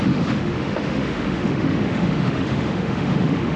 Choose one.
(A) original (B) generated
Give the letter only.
B